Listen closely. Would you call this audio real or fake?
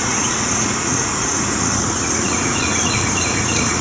fake